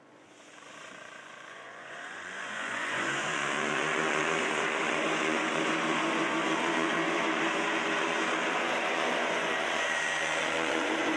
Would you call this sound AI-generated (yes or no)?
yes